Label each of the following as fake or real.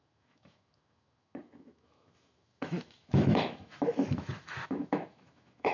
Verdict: fake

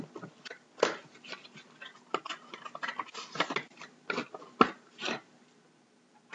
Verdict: real